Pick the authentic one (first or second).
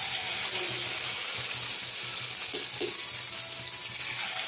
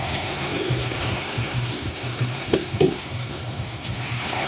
first